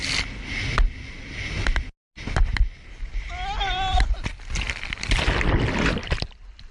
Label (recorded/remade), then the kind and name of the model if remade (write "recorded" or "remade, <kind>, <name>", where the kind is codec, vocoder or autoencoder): recorded